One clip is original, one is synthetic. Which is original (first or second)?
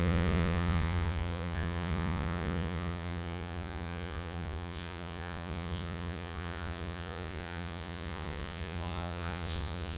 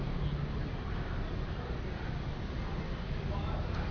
second